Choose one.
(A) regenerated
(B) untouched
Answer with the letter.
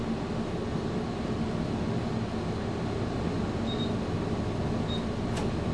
B